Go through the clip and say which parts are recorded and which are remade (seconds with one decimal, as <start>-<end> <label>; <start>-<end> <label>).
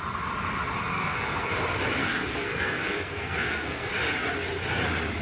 0.0-0.9 recorded; 0.9-1.5 remade; 1.5-2.0 recorded; 2.0-3.9 remade; 3.9-5.2 recorded